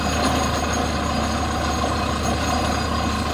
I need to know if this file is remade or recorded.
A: recorded